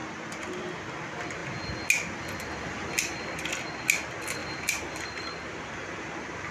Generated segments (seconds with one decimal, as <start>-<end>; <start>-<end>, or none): 4.4-4.9